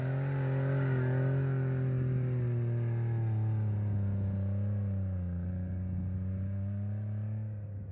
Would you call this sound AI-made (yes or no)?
no